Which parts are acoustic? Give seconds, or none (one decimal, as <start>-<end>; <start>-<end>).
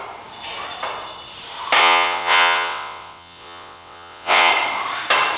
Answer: 0.0-1.8; 4.5-5.4